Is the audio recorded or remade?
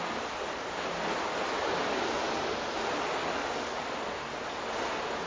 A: recorded